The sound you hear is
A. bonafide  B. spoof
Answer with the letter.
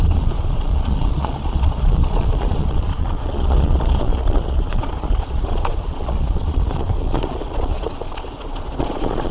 B